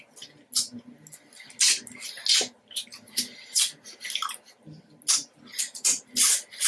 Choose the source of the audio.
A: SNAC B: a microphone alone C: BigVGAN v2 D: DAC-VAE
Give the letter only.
B